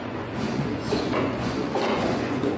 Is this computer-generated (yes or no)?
yes